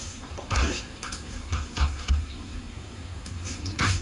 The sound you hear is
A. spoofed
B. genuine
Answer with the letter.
A